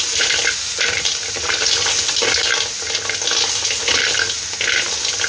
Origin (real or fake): real